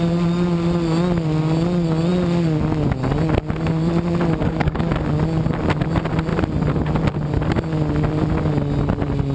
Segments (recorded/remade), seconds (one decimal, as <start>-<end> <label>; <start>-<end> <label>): 0.0-4.4 recorded; 4.4-4.9 remade; 4.9-9.3 recorded